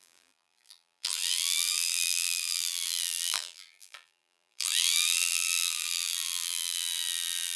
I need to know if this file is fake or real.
fake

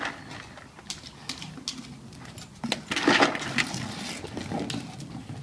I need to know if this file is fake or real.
real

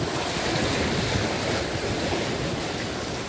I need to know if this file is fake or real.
real